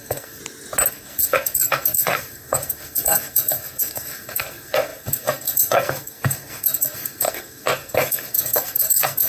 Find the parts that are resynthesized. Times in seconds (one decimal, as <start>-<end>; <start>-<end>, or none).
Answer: 0.0-0.4; 0.9-9.3